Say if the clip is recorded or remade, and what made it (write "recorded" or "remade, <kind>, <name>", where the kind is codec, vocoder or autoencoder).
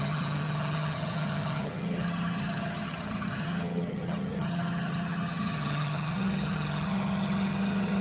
remade, vocoder, HiFi-GAN